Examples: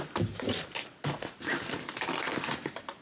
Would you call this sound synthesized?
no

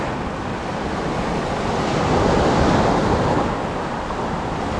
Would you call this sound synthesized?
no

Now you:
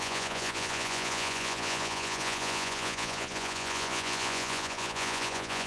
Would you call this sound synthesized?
yes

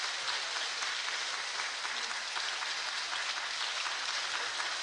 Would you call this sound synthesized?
no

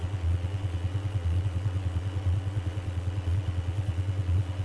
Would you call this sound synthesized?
yes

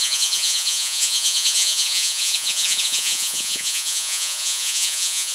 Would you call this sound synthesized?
yes